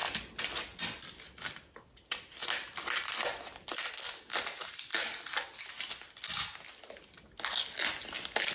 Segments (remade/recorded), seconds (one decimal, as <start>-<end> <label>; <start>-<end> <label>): 0.0-8.5 recorded